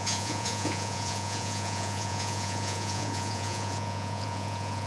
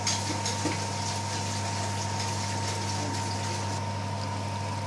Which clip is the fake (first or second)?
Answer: first